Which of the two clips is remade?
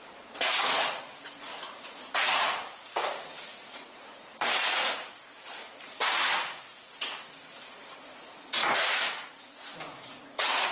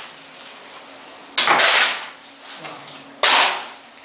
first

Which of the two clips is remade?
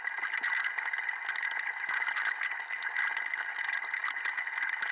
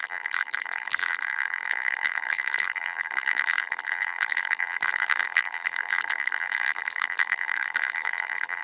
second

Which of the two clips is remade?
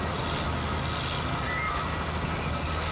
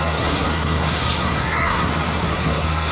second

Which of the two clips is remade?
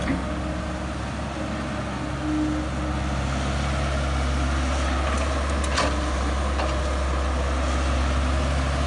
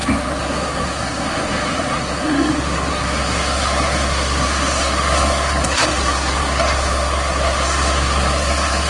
second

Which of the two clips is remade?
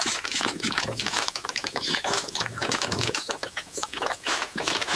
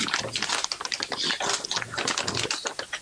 first